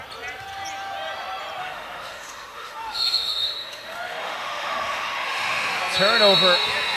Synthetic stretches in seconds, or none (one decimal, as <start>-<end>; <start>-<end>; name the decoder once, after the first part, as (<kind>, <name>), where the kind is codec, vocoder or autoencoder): 1.6-5.8 (autoencoder, DAC-VAE)